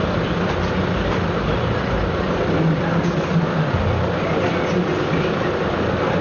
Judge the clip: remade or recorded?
recorded